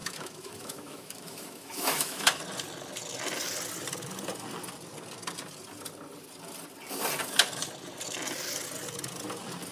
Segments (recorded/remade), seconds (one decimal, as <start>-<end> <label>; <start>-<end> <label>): 0.0-2.4 remade; 2.4-9.7 recorded